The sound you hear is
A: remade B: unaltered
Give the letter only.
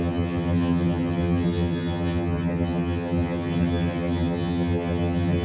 A